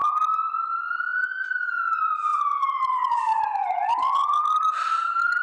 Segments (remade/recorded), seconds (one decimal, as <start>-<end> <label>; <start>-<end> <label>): 0.0-2.3 recorded; 2.3-5.4 remade